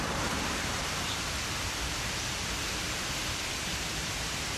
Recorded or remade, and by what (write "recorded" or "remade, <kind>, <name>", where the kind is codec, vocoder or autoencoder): remade, vocoder, BigVGAN v2